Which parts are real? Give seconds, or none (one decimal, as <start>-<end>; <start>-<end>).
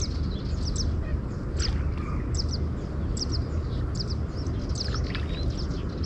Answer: 0.0-6.1